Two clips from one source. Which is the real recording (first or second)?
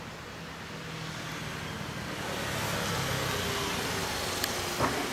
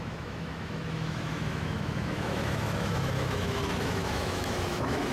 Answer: first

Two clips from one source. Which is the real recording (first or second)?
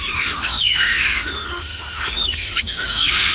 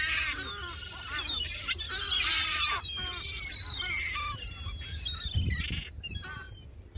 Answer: second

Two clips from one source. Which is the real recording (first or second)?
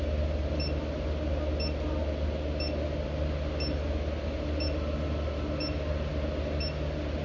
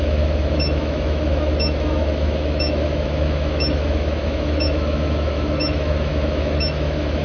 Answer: first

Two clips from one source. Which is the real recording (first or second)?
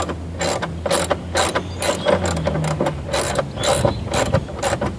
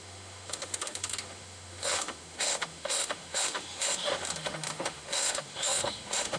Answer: first